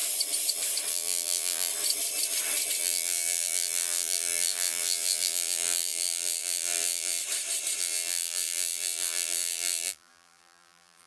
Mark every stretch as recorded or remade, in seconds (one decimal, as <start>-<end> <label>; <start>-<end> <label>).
0.0-0.9 recorded; 0.9-1.7 remade; 1.7-2.8 recorded; 2.8-7.2 remade; 7.2-7.8 recorded; 7.8-11.1 remade